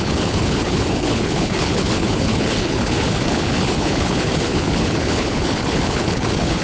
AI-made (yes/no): yes